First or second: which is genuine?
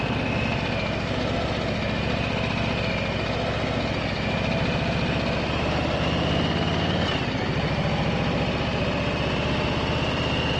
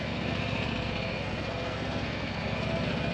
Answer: first